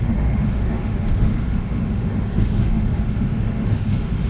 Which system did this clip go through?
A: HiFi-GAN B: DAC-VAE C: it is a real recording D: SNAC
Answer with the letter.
B